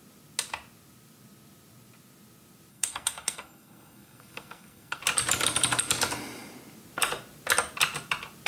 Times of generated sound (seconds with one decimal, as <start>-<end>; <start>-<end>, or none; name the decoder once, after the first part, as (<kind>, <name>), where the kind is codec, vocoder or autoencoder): 2.7-5.0 (codec, SNAC)